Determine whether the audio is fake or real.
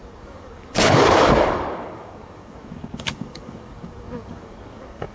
fake